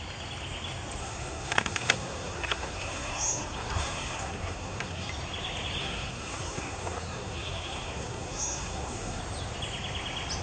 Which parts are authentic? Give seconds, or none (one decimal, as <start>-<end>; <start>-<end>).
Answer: 0.0-1.0; 5.1-5.8; 9.2-10.4